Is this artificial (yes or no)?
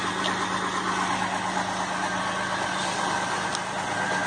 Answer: no